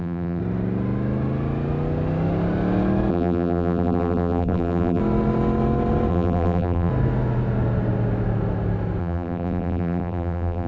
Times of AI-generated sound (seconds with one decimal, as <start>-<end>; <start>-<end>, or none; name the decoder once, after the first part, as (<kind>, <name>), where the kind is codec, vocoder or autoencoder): 0.0-0.4 (vocoder, BigVGAN v2); 3.1-5.0; 6.1-6.9; 9.0-10.7